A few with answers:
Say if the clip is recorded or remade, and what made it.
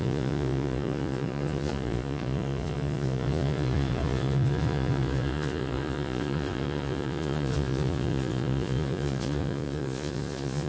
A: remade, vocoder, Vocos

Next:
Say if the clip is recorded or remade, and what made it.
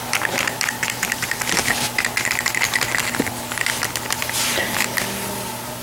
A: recorded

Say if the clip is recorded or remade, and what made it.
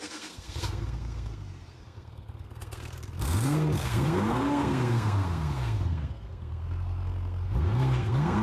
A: remade, codec, SNAC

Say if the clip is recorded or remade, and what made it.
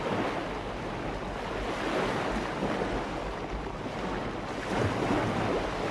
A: recorded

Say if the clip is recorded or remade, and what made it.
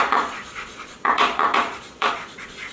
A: remade, vocoder, Vocos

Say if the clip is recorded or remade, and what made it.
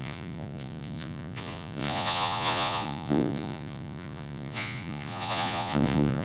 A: remade, vocoder, Vocos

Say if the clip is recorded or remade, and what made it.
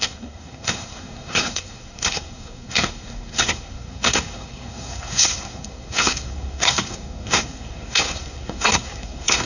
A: remade, codec, SNAC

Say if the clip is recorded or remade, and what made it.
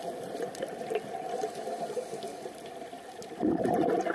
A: remade, vocoder, BigVGAN v2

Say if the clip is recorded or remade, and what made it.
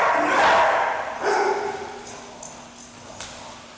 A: recorded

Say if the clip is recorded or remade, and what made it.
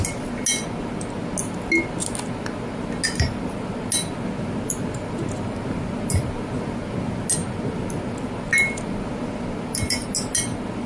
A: recorded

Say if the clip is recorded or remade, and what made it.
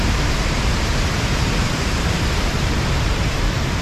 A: remade, vocoder, BigVGAN v2